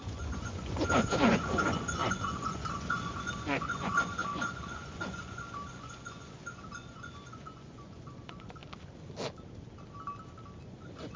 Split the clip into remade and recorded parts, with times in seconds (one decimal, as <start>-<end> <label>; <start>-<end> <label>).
0.0-8.6 remade; 8.6-10.6 recorded; 10.6-11.2 remade

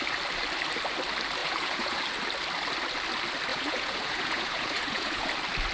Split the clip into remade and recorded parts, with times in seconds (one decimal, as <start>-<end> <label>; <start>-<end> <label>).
0.0-1.4 recorded; 1.4-2.0 remade; 2.0-3.5 recorded; 3.5-5.3 remade; 5.3-5.7 recorded

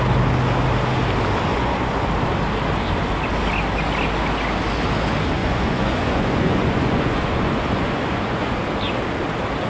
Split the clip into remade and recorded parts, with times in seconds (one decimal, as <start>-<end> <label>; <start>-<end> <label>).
0.0-1.5 recorded; 1.5-2.1 remade; 2.1-5.4 recorded; 5.4-8.5 remade; 8.5-9.7 recorded

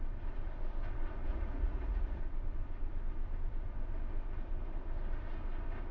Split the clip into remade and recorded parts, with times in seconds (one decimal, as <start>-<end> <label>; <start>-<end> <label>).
0.0-1.3 recorded; 1.3-2.2 remade; 2.2-5.9 recorded

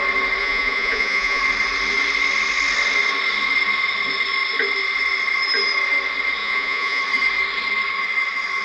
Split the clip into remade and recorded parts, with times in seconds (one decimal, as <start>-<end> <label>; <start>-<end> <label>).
0.0-0.4 recorded; 0.4-1.4 remade; 1.4-6.4 recorded; 6.4-7.0 remade; 7.0-8.6 recorded

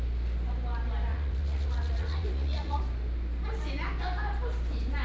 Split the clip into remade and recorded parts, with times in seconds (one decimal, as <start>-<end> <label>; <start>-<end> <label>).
0.0-1.1 recorded; 1.1-2.8 remade; 2.8-5.0 recorded

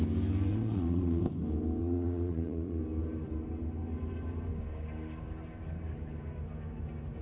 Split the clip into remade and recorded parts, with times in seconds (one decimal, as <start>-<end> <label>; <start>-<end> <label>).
0.0-0.5 recorded; 0.5-1.2 remade; 1.2-1.8 recorded; 1.8-2.8 remade; 2.8-7.2 recorded